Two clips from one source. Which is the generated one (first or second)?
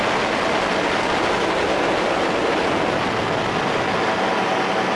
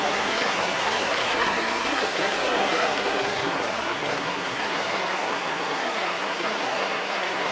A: second